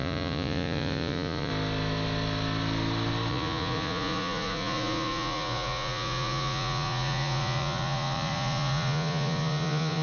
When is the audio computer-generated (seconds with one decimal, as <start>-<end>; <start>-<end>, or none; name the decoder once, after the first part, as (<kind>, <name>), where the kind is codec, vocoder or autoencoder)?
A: 0.0-1.5 (vocoder, Vocos); 3.3-10.0